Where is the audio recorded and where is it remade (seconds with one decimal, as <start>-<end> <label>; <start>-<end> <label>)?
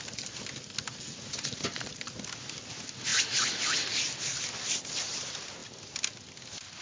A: 0.0-6.8 recorded